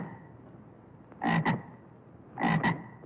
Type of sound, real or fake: real